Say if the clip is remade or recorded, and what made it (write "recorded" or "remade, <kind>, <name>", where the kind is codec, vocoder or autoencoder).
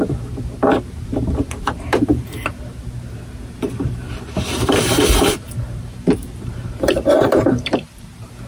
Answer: remade, vocoder, BigVGAN v2